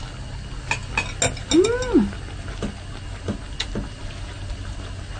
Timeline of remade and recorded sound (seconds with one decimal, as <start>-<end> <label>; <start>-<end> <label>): 0.0-5.2 recorded